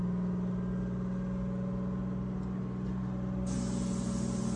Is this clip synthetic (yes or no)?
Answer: no